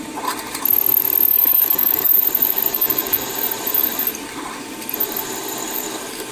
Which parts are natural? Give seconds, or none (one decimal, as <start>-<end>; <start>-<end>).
0.0-1.3; 2.1-2.7; 3.3-6.3